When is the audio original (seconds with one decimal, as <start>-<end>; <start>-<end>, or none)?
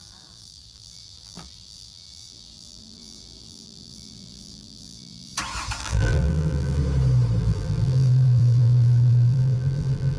5.3-5.8; 6.8-7.4